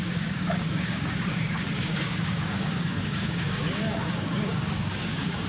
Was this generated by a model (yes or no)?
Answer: yes